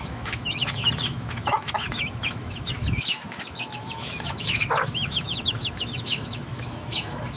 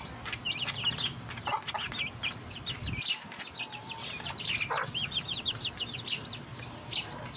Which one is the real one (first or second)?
second